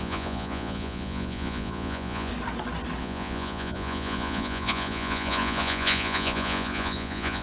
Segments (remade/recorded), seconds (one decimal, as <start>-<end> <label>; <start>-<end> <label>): 0.0-2.3 remade; 2.3-3.0 recorded; 3.0-7.4 remade